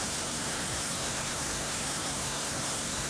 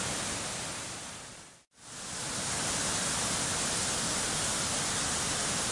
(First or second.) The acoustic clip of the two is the second